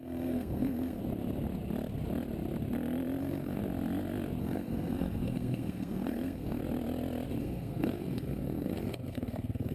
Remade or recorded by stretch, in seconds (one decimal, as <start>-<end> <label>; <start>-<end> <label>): 0.0-1.0 remade; 1.0-3.2 recorded; 3.2-3.6 remade; 3.6-4.4 recorded; 4.4-6.6 remade; 6.6-7.4 recorded; 7.4-9.7 remade